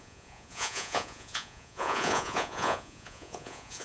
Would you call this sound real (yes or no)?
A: no